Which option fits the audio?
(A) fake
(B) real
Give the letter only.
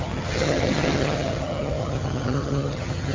A